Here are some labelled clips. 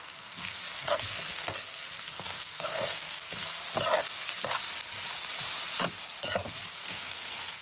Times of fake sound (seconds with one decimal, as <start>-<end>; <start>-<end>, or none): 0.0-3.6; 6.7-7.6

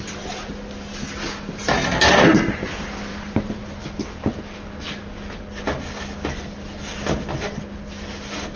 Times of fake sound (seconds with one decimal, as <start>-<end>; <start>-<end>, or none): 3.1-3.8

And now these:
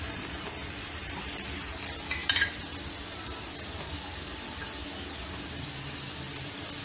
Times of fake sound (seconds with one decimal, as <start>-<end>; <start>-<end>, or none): 0.6-1.7; 2.2-3.8

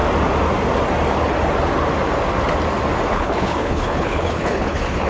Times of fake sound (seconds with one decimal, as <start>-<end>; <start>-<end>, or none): 3.1-5.1